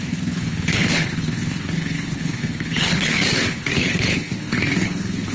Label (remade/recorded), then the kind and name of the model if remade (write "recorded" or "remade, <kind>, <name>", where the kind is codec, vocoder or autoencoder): remade, codec, HILCodec